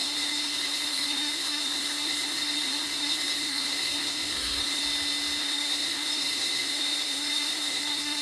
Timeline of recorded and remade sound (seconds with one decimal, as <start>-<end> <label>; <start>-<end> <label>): 0.0-4.8 remade; 4.8-5.4 recorded; 5.4-8.2 remade